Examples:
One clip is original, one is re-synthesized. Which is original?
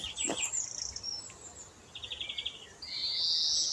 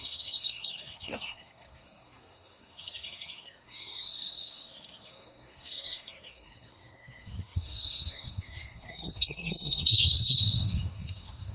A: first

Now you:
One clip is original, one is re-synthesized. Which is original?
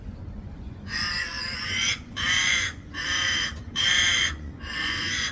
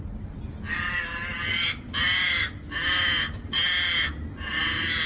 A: second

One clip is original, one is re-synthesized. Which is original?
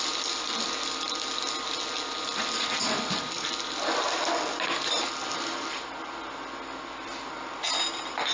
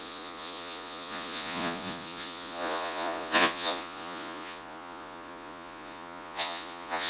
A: first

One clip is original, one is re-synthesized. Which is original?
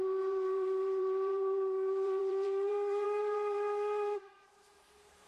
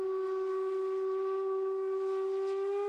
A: second